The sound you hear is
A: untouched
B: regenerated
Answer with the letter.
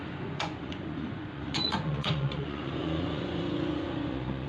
B